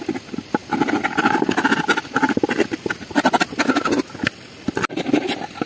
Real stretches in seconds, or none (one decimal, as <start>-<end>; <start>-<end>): 0.0-5.7

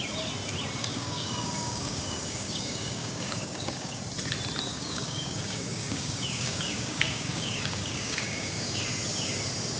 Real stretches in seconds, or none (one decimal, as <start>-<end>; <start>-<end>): 0.0-0.8; 4.0-4.7; 8.8-9.8